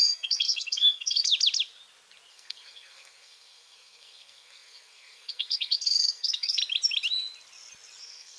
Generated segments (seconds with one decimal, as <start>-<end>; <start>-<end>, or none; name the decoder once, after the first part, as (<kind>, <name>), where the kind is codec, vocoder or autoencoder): 0.0-1.3 (codec, SNAC); 2.3-6.6; 8.0-8.4